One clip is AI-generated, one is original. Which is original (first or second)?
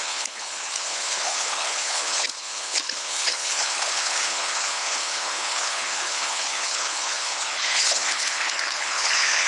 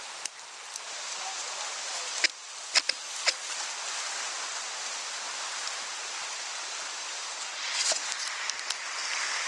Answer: second